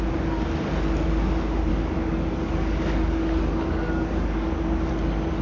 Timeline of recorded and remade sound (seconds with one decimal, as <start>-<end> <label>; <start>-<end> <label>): 0.0-1.7 recorded; 1.7-4.9 remade; 4.9-5.4 recorded